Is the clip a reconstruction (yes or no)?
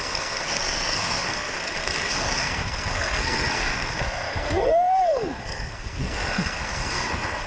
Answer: yes